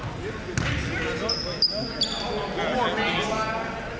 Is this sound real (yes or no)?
yes